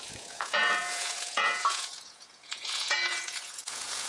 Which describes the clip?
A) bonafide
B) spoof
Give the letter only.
B